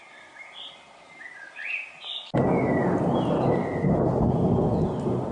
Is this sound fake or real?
real